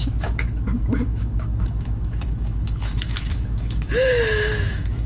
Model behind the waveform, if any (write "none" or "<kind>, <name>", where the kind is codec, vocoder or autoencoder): autoencoder, DAC-VAE